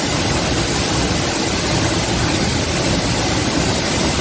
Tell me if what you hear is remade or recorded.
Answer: recorded